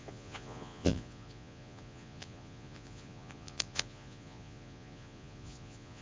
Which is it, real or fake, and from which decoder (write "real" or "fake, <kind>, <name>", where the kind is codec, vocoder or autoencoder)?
fake, vocoder, Vocos